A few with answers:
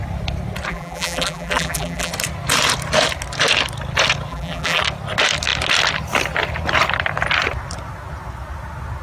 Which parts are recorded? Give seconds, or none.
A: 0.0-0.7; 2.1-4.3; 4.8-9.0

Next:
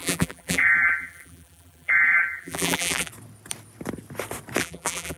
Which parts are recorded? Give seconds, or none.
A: 3.1-4.6

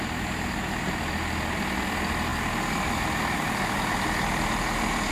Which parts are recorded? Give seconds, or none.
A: 0.0-5.1

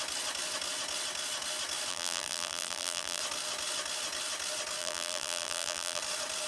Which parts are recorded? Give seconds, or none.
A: 0.0-1.9; 3.2-4.8; 6.0-6.5

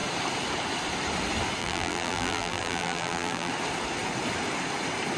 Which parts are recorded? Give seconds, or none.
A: 0.0-1.6; 3.5-5.2

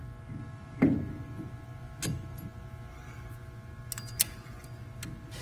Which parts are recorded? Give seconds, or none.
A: 0.0-5.4